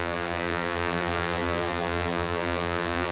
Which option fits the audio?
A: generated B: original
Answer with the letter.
A